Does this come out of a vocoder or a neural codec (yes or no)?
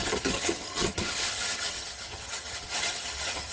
yes